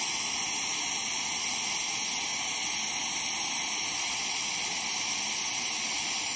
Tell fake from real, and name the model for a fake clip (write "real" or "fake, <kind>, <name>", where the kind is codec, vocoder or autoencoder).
real